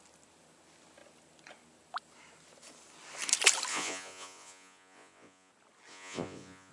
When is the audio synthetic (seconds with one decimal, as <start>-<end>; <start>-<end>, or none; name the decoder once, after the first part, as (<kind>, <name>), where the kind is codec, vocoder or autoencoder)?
3.7-5.5 (vocoder, Vocos); 5.9-6.7